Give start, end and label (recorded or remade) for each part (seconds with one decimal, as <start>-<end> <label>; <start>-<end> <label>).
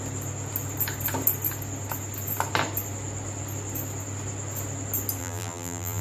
0.0-5.2 recorded; 5.2-6.0 remade